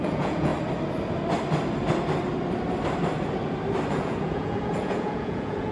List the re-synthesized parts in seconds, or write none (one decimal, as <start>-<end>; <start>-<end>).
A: 0.0-0.5; 3.9-5.7